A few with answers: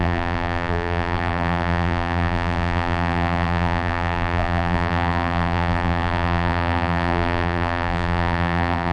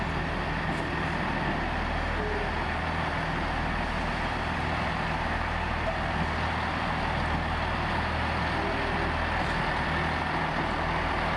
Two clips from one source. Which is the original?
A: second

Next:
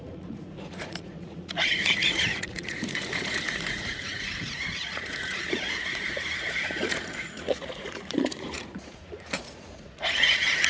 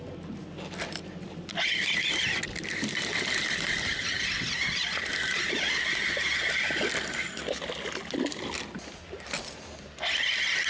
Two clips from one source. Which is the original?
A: second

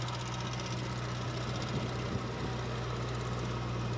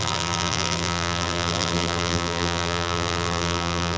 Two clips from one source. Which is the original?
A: first